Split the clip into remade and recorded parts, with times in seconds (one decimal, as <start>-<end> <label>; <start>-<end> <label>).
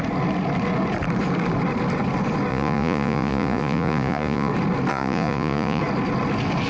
0.0-2.5 recorded; 2.5-4.5 remade; 4.5-4.9 recorded; 4.9-5.8 remade; 5.8-6.7 recorded